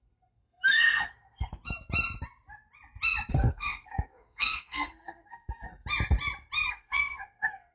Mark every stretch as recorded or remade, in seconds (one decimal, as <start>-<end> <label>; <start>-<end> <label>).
0.0-1.5 remade; 1.5-3.3 recorded; 3.3-5.7 remade; 5.7-6.7 recorded; 6.7-7.7 remade